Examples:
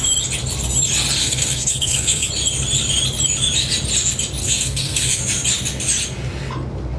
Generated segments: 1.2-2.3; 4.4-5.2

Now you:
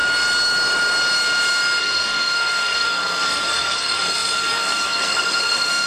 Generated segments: 1.8-5.9